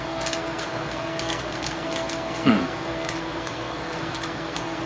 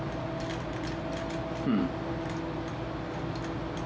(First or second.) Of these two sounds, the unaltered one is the second